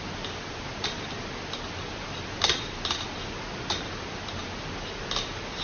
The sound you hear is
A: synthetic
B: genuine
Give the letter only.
B